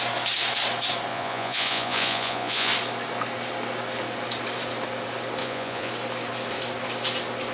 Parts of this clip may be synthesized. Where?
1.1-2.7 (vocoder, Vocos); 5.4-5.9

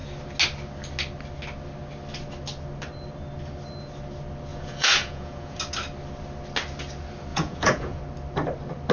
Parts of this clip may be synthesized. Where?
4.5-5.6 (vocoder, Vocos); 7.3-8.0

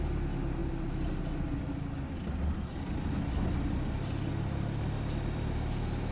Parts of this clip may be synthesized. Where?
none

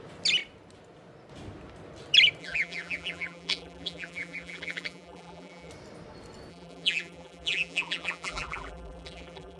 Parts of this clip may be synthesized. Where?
2.4-5.7 (vocoder, BigVGAN v2); 6.5-9.6

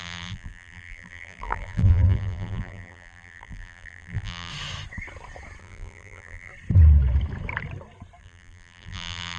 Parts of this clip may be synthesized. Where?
0.0-4.5 (vocoder, BigVGAN v2); 5.6-6.5; 8.2-9.4

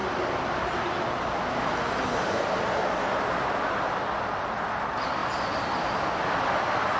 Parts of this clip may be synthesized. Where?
none

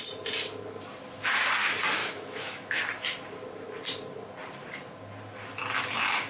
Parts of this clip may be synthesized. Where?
2.0-2.8 (autoencoder, DAC-VAE)